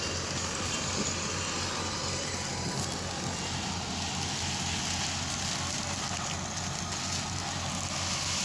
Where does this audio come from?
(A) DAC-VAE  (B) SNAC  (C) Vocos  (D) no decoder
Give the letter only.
D